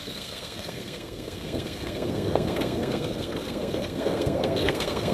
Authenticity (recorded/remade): remade